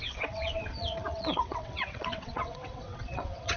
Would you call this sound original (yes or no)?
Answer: no